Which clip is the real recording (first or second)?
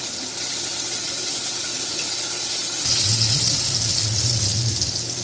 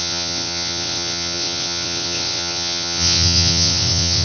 first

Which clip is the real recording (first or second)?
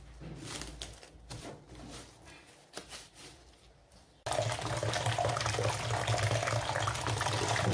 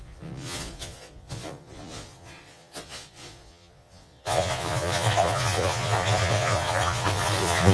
first